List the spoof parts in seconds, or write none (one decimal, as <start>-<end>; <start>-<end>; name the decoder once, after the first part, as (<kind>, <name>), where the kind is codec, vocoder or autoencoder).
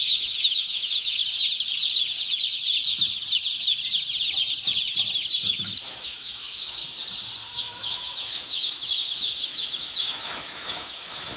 0.0-1.2 (autoencoder, DAC-VAE); 5.4-6.8; 7.6-11.4